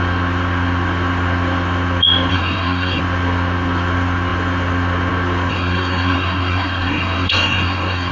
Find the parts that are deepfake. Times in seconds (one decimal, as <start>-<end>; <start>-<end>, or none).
2.3-3.0; 5.5-8.1